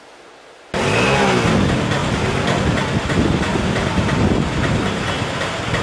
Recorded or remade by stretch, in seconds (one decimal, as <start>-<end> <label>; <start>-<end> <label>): 0.0-5.8 recorded